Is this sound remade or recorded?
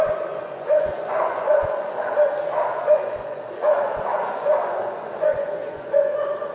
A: remade